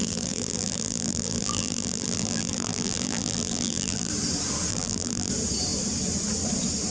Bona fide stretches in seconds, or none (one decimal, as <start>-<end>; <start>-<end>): 4.1-4.7; 5.3-6.9